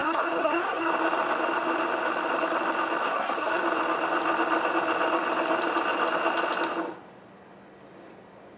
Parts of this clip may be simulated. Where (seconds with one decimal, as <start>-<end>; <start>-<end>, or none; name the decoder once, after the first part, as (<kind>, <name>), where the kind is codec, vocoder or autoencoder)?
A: 0.0-0.9 (codec, SNAC); 3.0-3.6